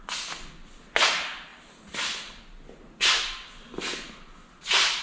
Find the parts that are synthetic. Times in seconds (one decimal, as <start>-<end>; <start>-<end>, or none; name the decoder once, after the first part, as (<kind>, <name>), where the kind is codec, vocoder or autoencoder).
none